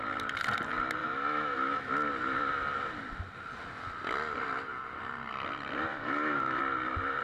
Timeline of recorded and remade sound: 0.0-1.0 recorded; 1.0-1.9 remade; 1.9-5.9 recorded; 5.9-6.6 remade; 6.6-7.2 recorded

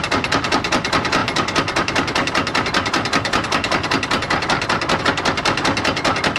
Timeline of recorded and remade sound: 0.0-6.4 recorded

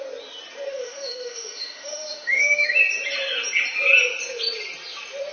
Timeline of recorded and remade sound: 0.0-0.7 recorded; 0.7-2.8 remade; 2.8-5.3 recorded

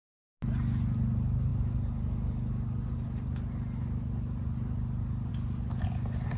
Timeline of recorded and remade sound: 0.0-6.4 recorded

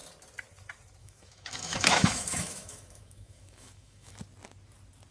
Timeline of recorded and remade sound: 0.0-1.0 recorded; 1.0-4.1 remade; 4.1-5.1 recorded

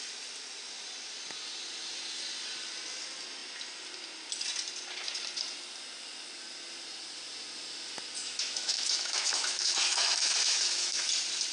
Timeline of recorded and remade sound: 0.0-8.2 recorded; 8.2-11.1 remade; 11.1-11.5 recorded

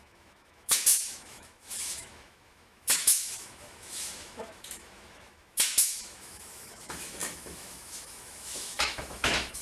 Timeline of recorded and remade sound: 0.0-9.6 remade